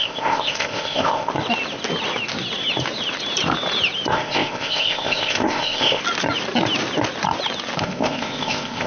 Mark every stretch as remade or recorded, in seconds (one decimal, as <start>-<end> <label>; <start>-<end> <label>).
0.0-1.3 remade; 1.3-4.1 recorded; 4.1-6.0 remade; 6.0-7.8 recorded; 7.8-8.9 remade